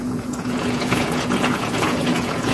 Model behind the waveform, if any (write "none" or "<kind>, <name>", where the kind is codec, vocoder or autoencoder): vocoder, Vocos